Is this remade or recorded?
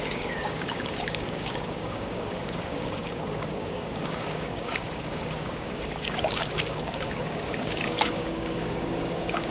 remade